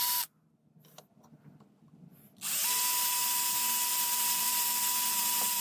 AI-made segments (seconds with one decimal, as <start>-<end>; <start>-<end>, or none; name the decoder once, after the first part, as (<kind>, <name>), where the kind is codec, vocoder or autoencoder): 3.9-5.6 (vocoder, BigVGAN v2)